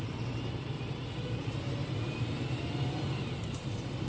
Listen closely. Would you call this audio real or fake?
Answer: fake